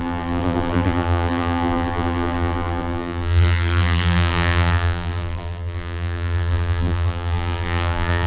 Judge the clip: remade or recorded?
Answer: remade